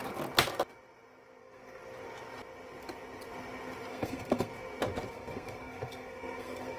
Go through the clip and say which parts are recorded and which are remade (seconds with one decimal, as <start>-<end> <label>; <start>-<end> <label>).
0.0-1.4 recorded; 1.4-1.8 remade; 1.8-3.9 recorded; 3.9-4.5 remade; 4.5-5.1 recorded; 5.1-6.8 remade